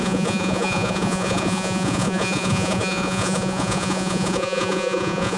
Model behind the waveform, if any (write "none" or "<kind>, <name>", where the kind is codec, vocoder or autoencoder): vocoder, Vocos